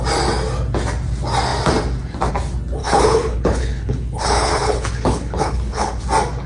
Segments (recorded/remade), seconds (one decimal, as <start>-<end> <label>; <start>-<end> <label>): 0.0-2.8 recorded; 2.8-6.0 remade; 6.0-6.5 recorded